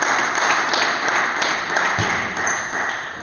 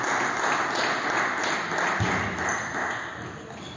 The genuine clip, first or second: second